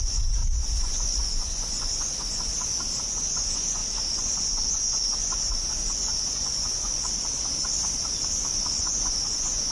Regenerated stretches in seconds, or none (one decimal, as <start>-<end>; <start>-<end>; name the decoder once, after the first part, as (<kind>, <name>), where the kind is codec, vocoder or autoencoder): 0.0-2.5 (vocoder, Vocos); 3.1-6.9; 8.8-9.7